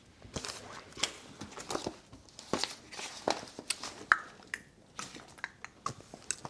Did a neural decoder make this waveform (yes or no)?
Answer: no